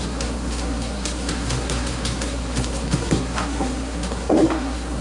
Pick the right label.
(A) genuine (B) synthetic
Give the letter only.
B